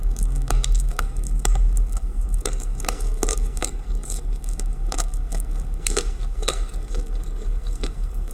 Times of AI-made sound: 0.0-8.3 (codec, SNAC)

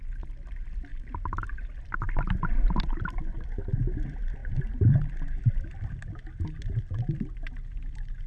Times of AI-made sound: none

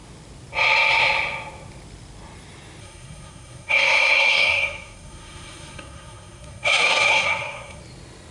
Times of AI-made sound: 2.8-7.8 (codec, SNAC)

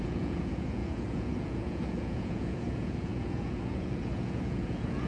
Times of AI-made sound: 0.0-5.1 (vocoder, Vocos)